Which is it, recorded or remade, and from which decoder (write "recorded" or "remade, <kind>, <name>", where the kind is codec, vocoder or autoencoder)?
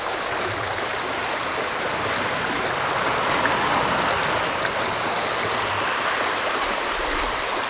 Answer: recorded